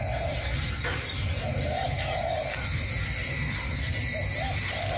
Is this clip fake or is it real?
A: real